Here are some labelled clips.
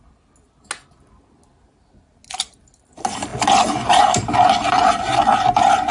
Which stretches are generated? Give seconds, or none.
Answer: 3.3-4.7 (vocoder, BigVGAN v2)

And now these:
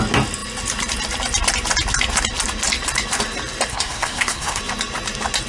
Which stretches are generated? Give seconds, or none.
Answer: 3.7-4.6 (codec, SNAC)

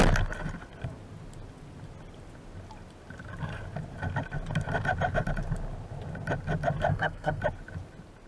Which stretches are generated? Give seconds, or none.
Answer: 6.9-7.4 (codec, SNAC)

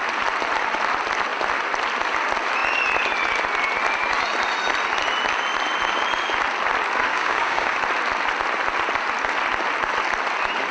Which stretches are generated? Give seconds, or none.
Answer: 7.1-7.8 (codec, DAC)

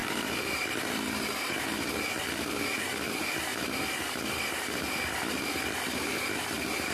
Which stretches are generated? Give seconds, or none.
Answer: none